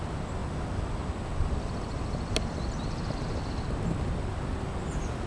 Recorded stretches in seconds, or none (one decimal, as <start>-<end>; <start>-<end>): 0.0-5.3